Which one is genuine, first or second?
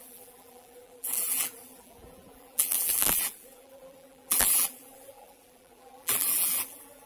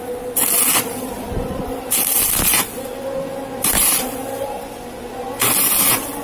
second